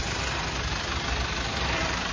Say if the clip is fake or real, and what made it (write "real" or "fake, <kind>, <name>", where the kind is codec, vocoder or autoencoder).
real